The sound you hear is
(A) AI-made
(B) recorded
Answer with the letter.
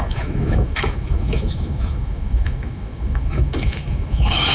A